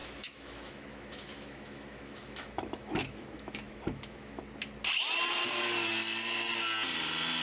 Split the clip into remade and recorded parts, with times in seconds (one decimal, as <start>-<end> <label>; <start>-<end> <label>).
0.0-4.4 remade; 4.4-7.4 recorded